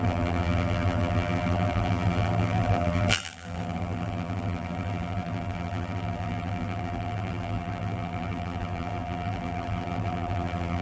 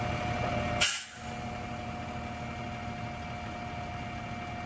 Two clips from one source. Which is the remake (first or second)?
first